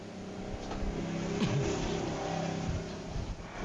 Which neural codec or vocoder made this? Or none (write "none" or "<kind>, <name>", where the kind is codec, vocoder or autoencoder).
none